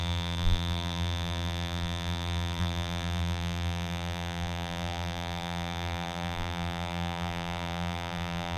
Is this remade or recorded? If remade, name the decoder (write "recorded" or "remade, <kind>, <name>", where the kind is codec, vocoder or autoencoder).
remade, vocoder, BigVGAN v2